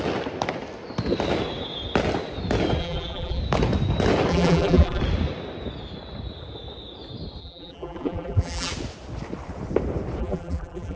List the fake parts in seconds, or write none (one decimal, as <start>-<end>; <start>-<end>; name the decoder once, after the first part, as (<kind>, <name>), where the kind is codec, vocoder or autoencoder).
2.8-3.4 (vocoder, BigVGAN v2); 4.3-5.0; 7.4-8.7; 10.2-11.0